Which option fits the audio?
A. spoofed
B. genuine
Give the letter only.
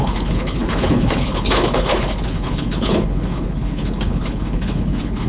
A